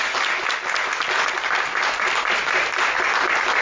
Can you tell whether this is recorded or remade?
recorded